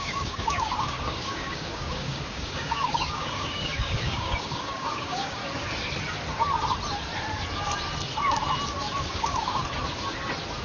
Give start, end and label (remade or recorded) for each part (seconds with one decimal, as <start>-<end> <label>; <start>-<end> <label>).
0.0-5.4 remade; 5.4-9.1 recorded; 9.1-9.6 remade; 9.6-10.6 recorded